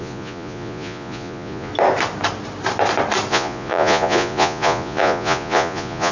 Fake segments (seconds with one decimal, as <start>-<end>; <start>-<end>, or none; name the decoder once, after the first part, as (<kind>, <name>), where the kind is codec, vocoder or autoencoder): 0.0-1.7 (vocoder, Vocos); 3.3-6.1